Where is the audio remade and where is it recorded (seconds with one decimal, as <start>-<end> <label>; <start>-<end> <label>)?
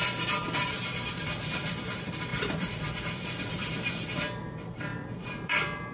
0.0-5.9 remade